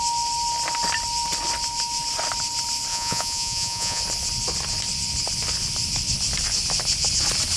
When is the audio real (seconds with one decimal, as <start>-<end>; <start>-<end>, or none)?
0.0-2.9; 4.0-7.6